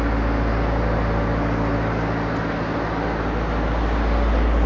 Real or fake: real